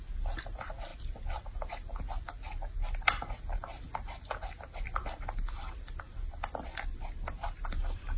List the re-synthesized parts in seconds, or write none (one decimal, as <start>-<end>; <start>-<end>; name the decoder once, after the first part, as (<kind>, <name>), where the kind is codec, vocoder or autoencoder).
none